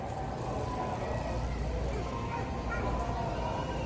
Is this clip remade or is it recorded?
recorded